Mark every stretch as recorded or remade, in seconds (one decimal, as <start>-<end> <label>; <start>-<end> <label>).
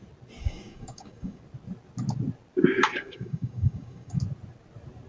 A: 0.0-0.4 recorded; 0.4-1.4 remade; 1.4-2.9 recorded; 2.9-4.2 remade; 4.2-5.1 recorded